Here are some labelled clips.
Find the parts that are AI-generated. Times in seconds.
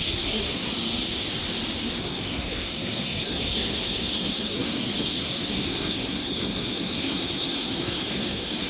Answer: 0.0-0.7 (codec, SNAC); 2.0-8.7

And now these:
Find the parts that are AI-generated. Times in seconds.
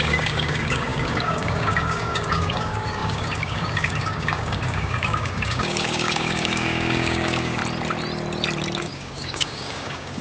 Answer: 0.0-7.6 (codec, DAC); 8.8-10.2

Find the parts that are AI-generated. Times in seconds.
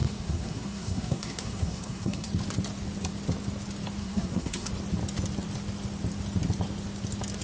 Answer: 0.0-2.3 (codec, SNAC); 4.0-4.7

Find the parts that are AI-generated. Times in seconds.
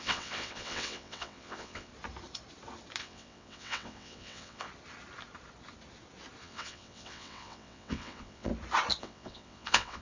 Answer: 0.0-1.9 (vocoder, WaveNeXt); 3.0-4.7; 6.4-8.5; 9.0-10.0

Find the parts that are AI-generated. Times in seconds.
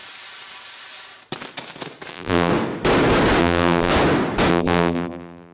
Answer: 2.1-2.5 (vocoder, BigVGAN v2); 3.4-3.9; 4.5-5.5